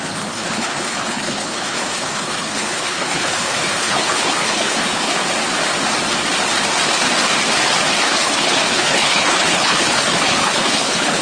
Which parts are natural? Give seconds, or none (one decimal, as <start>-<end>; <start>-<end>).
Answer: 5.2-8.0